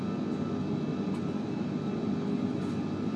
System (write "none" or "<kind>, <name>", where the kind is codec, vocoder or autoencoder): none